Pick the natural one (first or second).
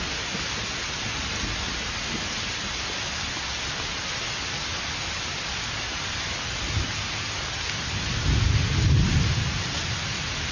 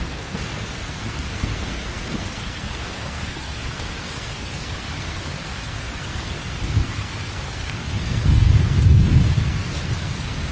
first